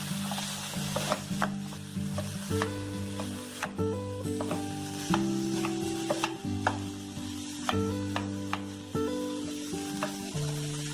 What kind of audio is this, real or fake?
real